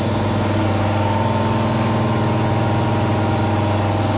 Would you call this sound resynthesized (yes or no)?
no